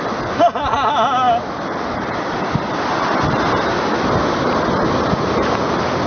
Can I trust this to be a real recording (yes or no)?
yes